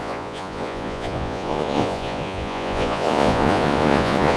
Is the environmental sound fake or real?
fake